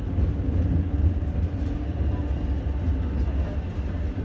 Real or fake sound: real